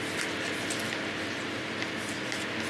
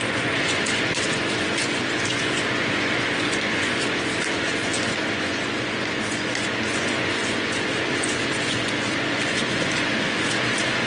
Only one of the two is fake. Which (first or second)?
second